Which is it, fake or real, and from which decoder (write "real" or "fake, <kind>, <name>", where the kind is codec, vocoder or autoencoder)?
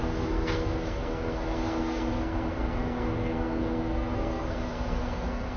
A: fake, codec, SNAC